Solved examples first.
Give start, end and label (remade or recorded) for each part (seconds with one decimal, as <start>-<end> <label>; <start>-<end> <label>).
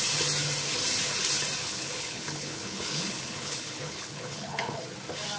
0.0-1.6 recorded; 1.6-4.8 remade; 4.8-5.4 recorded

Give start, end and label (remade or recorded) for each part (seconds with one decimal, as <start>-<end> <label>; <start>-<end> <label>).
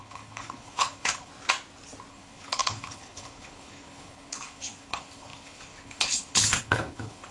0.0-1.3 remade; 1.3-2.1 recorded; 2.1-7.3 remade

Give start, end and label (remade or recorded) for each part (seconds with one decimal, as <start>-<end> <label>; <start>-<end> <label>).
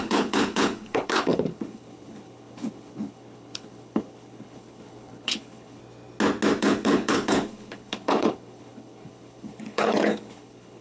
0.0-5.8 remade; 5.8-6.6 recorded; 6.6-10.8 remade